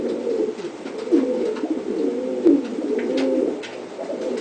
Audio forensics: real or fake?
real